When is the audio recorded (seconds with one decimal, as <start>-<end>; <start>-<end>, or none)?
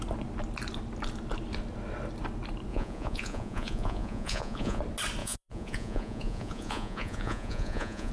0.0-2.7; 4.8-5.2